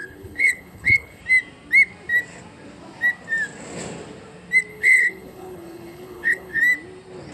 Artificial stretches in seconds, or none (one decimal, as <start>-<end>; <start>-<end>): 0.0-1.2; 4.7-6.6